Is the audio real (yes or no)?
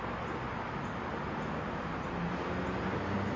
yes